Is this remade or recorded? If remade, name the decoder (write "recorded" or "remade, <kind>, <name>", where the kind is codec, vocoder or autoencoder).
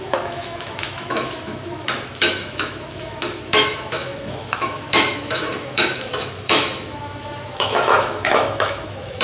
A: remade, autoencoder, DAC-VAE